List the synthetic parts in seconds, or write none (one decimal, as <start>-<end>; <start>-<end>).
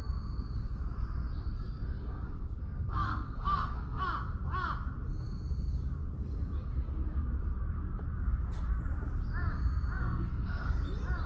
1.7-4.0; 10.0-10.8